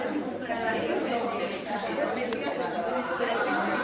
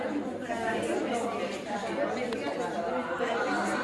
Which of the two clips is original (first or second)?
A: second